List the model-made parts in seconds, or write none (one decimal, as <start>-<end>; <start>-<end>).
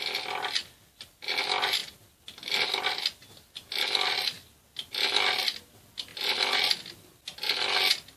none